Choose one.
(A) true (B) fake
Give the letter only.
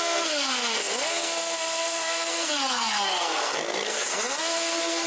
B